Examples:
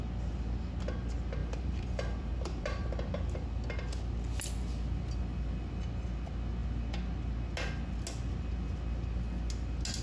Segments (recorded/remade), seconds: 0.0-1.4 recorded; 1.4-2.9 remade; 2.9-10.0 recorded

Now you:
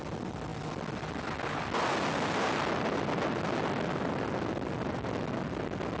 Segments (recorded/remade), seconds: 0.0-6.0 recorded

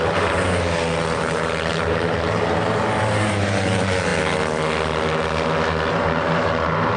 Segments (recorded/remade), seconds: 0.0-4.1 remade; 4.1-5.9 recorded; 5.9-7.0 remade

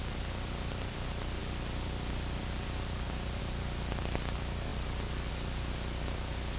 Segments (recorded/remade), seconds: 0.0-4.7 recorded; 4.7-5.3 remade; 5.3-6.6 recorded

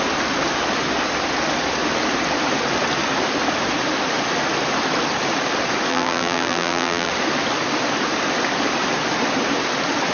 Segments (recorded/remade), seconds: 0.0-5.9 recorded; 5.9-7.1 remade; 7.1-10.1 recorded

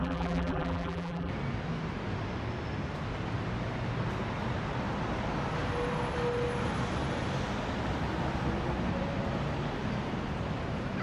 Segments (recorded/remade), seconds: 0.0-1.3 remade; 1.3-11.0 recorded

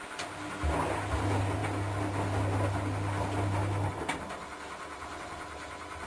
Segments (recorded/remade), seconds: 0.0-6.1 recorded

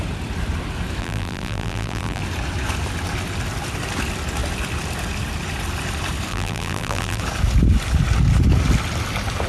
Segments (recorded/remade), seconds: 0.0-1.0 recorded; 1.0-2.2 remade; 2.2-6.3 recorded; 6.3-7.2 remade; 7.2-9.5 recorded